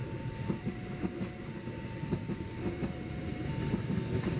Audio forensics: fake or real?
real